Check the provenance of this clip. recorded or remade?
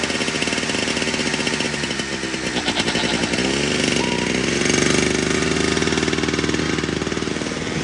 recorded